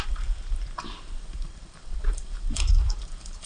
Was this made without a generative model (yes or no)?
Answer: no